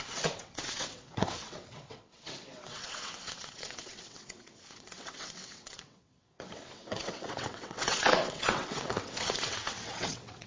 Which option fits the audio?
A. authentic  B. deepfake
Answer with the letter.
B